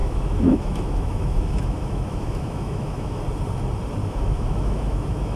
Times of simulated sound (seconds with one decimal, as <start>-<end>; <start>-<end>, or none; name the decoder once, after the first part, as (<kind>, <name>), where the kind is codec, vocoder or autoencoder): 0.0-3.2 (autoencoder, DAC-VAE); 4.0-5.4